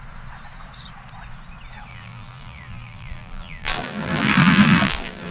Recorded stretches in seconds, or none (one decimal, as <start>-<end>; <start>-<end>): 0.0-1.9